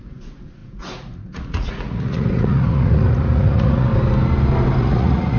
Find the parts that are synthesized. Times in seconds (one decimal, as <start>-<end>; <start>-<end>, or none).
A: 0.0-3.9; 4.8-5.4